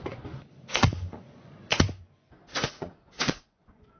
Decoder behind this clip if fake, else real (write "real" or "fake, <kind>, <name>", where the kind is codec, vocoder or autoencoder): fake, vocoder, Vocos